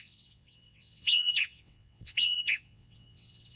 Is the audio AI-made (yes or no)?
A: yes